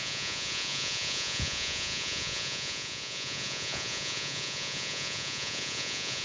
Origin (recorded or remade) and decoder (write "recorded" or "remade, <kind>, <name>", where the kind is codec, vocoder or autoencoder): remade, vocoder, Vocos